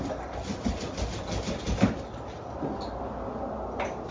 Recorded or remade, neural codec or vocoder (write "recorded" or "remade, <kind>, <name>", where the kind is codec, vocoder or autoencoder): recorded